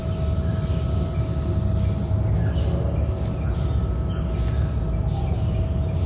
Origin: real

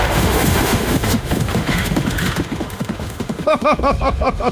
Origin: fake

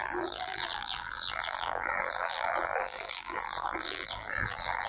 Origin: fake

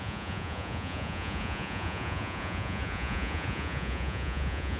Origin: fake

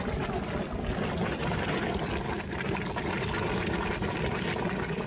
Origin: real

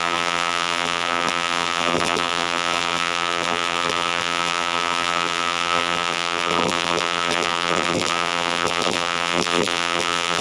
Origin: fake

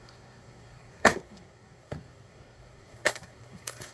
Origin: fake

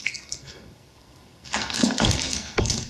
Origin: fake